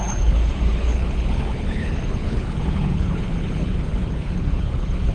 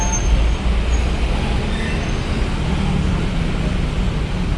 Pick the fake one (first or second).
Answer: first